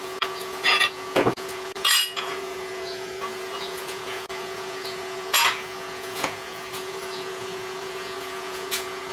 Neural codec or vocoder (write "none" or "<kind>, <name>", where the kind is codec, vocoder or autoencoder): vocoder, Vocos